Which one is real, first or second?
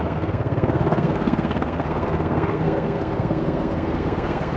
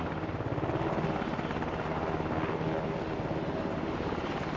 second